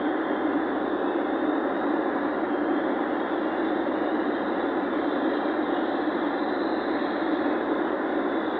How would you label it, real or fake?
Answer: real